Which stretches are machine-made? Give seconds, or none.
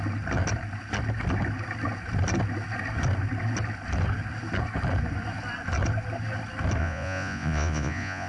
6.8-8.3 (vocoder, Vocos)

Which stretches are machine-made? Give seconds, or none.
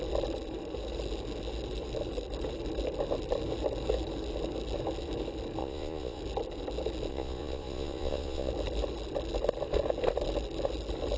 5.6-6.2 (vocoder, Vocos); 7.1-8.5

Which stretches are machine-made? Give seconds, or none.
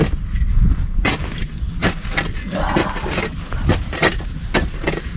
none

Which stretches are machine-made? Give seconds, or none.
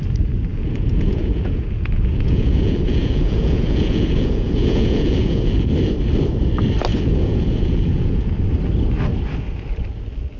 0.5-5.7 (vocoder, Vocos); 6.9-8.3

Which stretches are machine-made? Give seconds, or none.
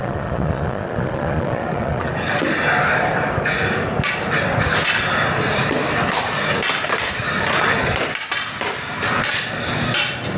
0.0-2.1 (vocoder, Vocos)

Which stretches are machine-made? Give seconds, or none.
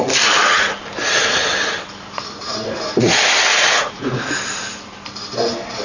3.5-4.2 (vocoder, Vocos)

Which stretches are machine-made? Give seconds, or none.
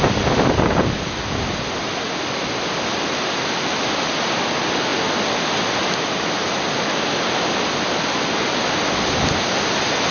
none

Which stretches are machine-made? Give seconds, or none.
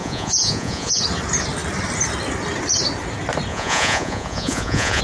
0.0-1.0 (vocoder, Vocos); 3.5-5.0